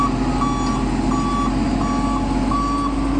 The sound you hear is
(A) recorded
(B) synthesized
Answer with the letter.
A